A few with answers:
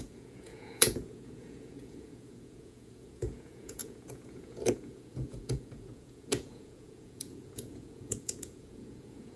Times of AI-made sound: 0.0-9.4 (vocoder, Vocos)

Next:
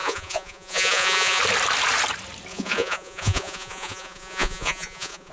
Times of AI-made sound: 0.0-1.4 (vocoder, Vocos); 2.5-5.3